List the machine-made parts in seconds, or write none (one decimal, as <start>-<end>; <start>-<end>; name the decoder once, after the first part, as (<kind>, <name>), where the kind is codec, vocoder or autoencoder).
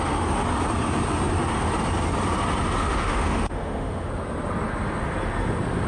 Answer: 2.8-4.1 (autoencoder, DAC-VAE)